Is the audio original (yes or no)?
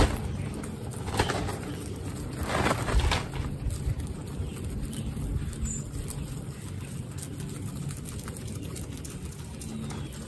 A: yes